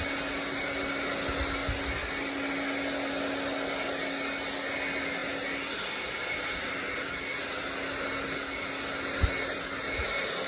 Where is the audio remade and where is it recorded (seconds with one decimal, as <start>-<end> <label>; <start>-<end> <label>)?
0.0-10.5 recorded